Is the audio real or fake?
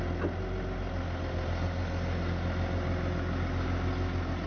real